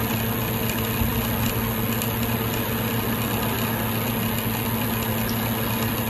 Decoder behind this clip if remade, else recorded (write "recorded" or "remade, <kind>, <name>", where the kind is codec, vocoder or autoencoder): recorded